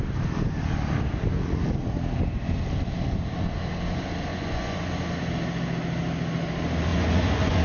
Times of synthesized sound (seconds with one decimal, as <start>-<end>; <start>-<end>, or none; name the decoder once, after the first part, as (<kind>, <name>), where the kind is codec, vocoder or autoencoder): 4.3-4.9 (vocoder, Vocos); 6.9-7.6